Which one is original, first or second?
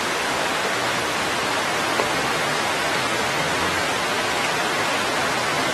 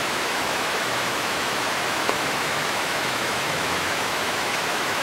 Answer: first